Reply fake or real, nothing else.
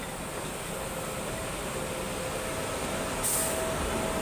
real